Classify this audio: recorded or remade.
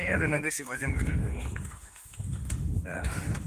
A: remade